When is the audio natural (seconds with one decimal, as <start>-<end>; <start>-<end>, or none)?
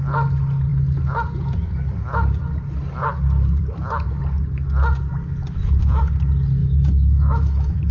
0.0-6.6